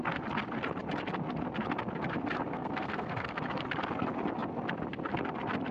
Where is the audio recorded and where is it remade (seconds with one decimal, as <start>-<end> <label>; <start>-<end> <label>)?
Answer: 0.0-2.5 recorded; 2.5-3.4 remade; 3.4-5.7 recorded